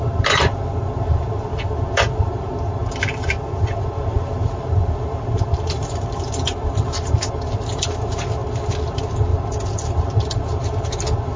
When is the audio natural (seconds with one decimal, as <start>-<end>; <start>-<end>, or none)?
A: 1.5-2.1; 2.8-3.7